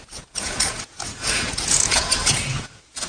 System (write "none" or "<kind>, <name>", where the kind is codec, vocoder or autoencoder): vocoder, Vocos